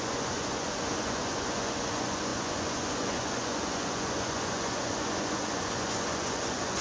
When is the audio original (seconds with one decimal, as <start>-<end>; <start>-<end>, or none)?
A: none